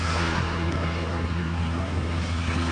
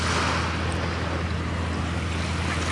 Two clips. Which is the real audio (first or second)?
second